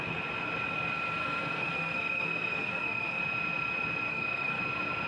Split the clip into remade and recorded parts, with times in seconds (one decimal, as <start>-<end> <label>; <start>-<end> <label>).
0.0-1.2 recorded; 1.2-3.2 remade; 3.2-4.1 recorded; 4.1-4.6 remade; 4.6-5.1 recorded